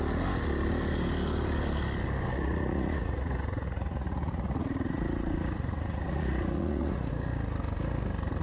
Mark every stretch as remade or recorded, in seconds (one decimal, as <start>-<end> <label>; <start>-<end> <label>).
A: 0.0-2.3 recorded; 2.3-7.1 remade; 7.1-8.4 recorded